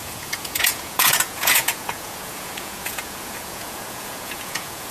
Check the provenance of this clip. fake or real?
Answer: fake